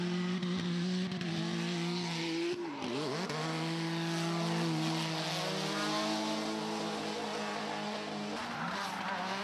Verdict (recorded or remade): recorded